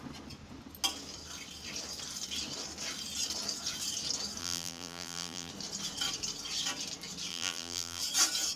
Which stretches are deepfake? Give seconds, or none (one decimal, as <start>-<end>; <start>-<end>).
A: 4.4-5.5; 7.3-8.0